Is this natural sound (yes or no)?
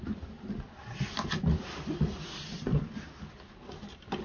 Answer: yes